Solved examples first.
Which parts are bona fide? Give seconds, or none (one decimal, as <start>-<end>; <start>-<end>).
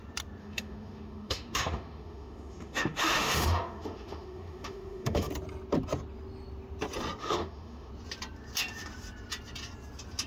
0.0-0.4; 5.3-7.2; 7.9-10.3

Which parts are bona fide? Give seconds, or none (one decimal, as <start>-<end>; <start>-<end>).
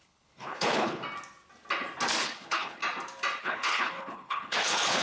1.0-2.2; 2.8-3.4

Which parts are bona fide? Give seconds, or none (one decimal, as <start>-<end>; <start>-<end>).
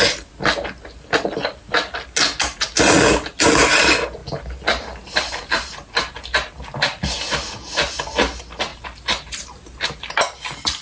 0.0-8.7; 9.8-10.8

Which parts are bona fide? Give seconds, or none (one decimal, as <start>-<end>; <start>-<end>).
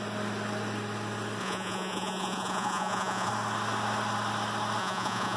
0.0-1.4; 3.3-4.8